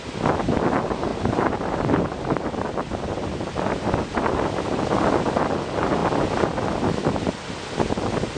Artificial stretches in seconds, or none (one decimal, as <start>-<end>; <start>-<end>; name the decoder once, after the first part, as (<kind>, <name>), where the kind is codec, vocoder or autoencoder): 1.1-4.9 (vocoder, BigVGAN v2)